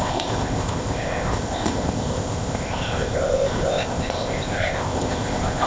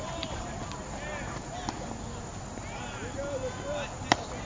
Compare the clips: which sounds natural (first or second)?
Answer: second